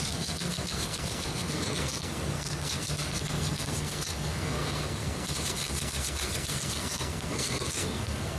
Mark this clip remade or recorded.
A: remade